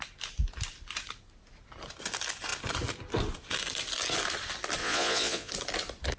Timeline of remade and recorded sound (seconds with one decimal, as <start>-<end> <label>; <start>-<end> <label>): 0.0-4.8 recorded; 4.8-5.5 remade; 5.5-6.2 recorded